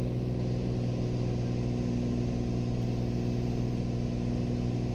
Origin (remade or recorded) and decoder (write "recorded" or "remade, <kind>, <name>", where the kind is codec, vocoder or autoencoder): recorded